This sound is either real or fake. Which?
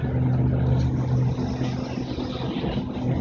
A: real